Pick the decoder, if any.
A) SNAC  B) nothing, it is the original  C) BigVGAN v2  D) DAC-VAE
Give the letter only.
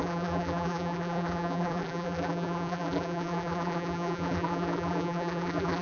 C